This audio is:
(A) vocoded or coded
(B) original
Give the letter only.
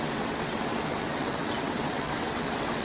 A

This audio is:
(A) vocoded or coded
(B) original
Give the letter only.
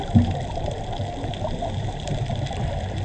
B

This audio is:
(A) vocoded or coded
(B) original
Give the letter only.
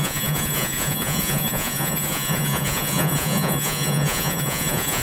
A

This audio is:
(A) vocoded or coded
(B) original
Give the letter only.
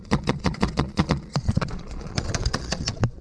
A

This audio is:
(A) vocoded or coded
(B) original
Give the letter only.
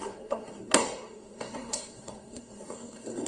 A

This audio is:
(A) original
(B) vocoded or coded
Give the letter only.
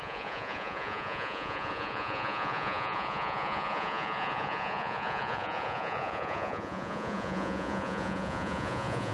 B